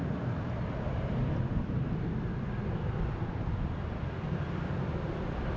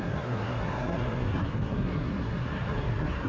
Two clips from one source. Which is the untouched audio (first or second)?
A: first